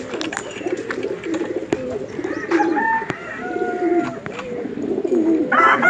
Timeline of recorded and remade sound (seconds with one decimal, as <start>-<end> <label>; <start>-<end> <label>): 0.0-5.9 recorded